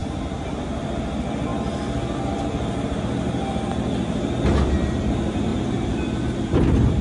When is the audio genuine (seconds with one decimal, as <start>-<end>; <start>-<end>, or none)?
0.5-5.5; 6.0-7.0